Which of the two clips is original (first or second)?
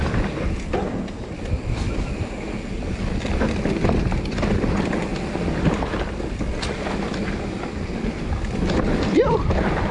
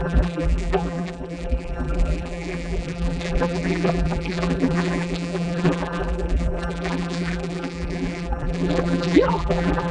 first